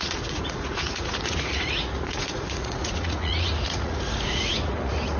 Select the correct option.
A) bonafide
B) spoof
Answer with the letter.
B